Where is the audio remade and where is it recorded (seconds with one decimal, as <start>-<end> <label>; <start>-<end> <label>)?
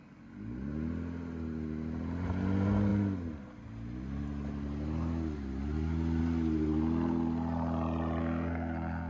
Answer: 0.0-8.2 recorded; 8.2-9.1 remade